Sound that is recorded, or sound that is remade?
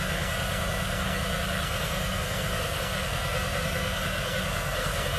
remade